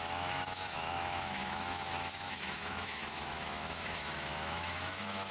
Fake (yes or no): yes